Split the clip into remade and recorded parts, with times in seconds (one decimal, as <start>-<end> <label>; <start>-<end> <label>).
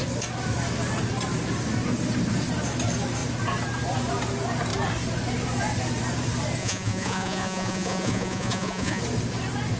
0.0-6.6 recorded; 6.6-9.0 remade; 9.0-9.8 recorded